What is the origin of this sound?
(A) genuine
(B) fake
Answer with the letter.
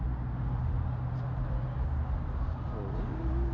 A